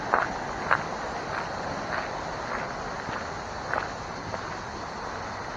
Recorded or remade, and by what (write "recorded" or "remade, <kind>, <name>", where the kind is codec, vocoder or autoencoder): recorded